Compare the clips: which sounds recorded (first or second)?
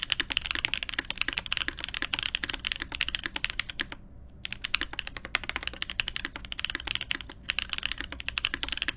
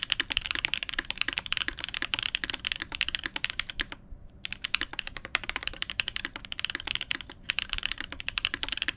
first